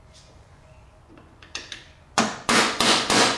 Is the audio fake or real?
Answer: fake